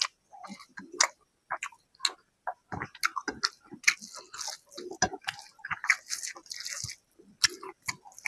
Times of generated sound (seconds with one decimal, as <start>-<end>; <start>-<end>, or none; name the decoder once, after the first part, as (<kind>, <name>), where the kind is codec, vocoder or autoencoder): none